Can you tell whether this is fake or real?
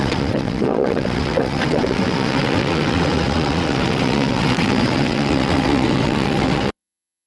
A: fake